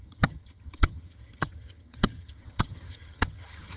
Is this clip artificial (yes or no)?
yes